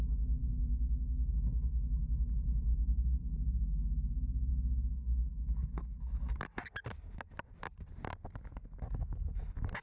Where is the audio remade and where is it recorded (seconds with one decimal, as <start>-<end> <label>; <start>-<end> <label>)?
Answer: 0.0-0.4 recorded; 0.4-1.3 remade; 1.3-2.7 recorded; 2.7-4.5 remade; 4.5-9.8 recorded